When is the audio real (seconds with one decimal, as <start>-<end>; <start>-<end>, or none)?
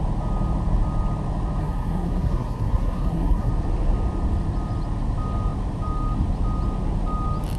0.0-1.6; 3.5-7.6